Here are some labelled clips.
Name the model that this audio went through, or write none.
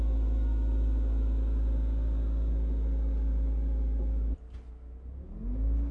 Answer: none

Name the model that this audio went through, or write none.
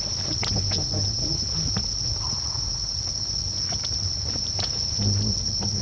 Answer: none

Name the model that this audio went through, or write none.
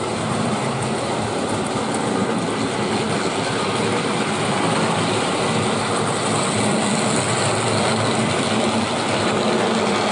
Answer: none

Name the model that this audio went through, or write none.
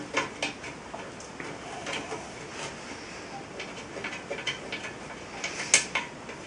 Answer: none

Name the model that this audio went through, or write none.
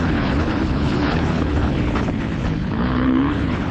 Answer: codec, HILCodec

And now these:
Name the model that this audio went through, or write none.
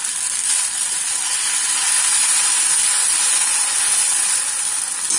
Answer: none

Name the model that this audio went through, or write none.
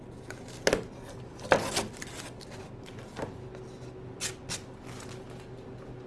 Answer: none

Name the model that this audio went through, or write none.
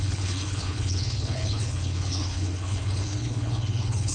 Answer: codec, HILCodec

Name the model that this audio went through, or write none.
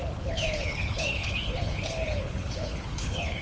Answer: codec, HILCodec